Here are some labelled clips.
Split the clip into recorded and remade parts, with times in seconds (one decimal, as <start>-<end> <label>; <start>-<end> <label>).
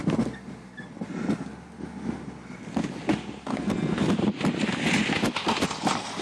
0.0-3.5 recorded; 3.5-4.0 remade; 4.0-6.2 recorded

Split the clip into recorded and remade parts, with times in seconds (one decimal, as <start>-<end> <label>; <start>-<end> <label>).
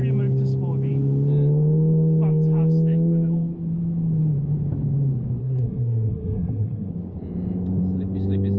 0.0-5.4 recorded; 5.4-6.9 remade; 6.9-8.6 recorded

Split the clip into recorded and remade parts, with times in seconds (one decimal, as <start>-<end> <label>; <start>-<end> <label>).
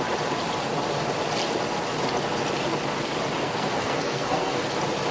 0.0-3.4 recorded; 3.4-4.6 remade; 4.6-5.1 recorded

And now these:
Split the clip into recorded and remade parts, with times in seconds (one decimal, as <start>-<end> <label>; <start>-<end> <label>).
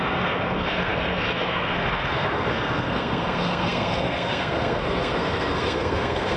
0.0-6.4 remade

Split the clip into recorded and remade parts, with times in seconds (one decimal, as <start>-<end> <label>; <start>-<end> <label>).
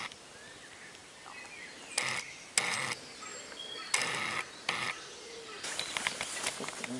0.0-7.0 recorded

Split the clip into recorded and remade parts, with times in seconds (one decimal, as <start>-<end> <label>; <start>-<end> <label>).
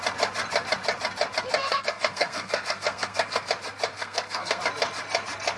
0.0-1.6 recorded; 1.6-3.5 remade; 3.5-3.9 recorded; 3.9-4.6 remade; 4.6-5.6 recorded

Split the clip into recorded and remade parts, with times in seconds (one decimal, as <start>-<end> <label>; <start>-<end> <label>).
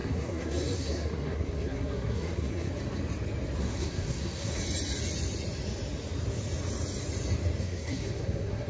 0.0-2.7 remade; 2.7-3.6 recorded; 3.6-4.6 remade; 4.6-7.6 recorded; 7.6-8.7 remade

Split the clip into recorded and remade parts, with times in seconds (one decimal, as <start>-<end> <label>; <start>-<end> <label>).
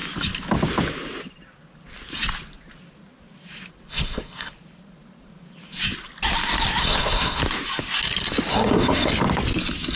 0.0-3.9 recorded; 3.9-4.5 remade; 4.5-6.8 recorded; 6.8-7.4 remade; 7.4-8.5 recorded; 8.5-9.1 remade; 9.1-10.0 recorded